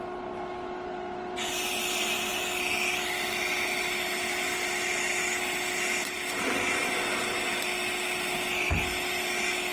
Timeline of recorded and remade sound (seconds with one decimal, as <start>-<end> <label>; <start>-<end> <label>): 0.0-9.7 remade